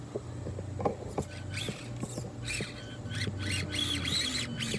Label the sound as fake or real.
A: real